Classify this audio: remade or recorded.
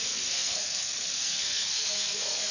remade